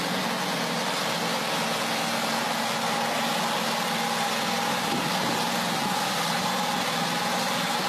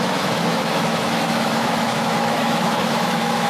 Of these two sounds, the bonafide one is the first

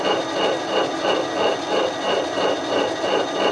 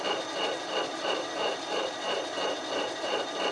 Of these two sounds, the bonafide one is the first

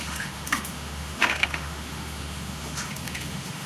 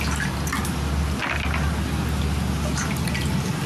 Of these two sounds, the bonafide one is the second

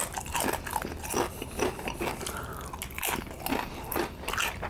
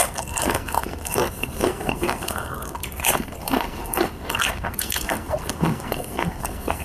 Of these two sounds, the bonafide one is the first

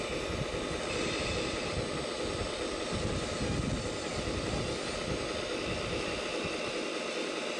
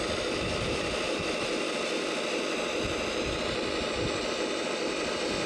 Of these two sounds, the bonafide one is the first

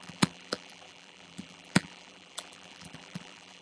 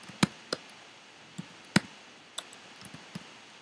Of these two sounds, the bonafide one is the second